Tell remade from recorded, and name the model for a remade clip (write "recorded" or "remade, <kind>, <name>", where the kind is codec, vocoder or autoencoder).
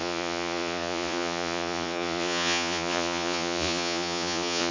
remade, vocoder, Vocos